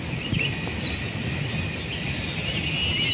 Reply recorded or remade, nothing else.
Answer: recorded